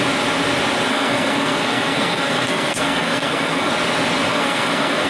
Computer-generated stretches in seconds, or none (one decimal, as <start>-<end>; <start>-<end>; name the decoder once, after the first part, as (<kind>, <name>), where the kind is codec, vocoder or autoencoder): 0.9-3.7 (codec, SNAC); 4.3-5.1